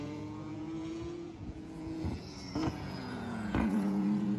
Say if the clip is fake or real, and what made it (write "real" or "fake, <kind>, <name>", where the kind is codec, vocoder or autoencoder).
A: fake, vocoder, Vocos